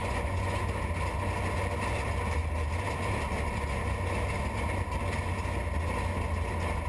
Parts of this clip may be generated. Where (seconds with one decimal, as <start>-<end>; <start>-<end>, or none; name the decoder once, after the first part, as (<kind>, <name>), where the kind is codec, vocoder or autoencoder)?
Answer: 0.0-0.6 (vocoder, Vocos)